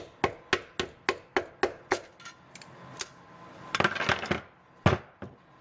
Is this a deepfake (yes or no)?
no